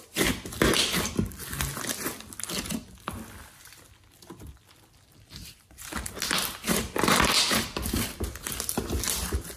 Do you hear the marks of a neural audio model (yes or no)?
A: no